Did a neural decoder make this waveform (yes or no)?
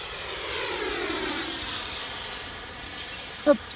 yes